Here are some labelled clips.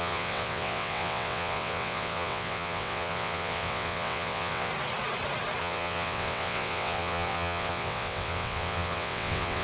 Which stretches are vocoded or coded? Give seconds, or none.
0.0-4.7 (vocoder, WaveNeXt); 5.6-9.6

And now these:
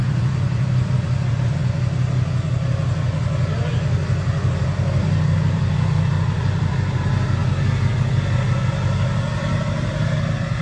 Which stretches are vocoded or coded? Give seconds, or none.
0.0-1.6 (vocoder, BigVGAN v2); 3.7-7.4; 7.9-10.6